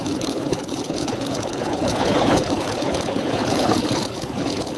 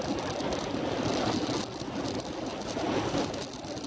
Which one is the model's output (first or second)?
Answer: first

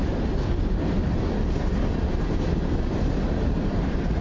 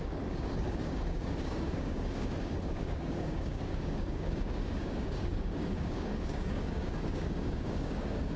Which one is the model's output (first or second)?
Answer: second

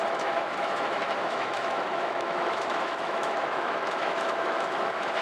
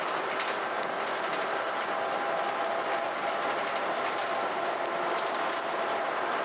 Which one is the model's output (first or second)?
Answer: first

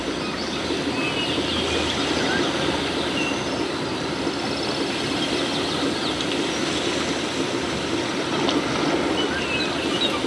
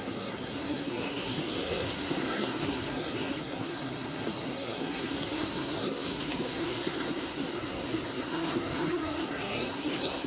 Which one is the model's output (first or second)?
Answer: second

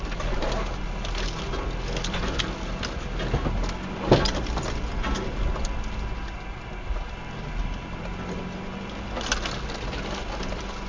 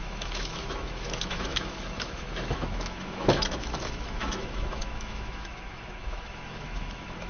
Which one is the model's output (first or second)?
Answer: second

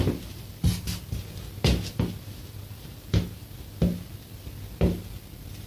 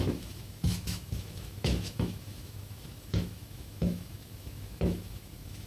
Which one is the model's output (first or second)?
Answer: second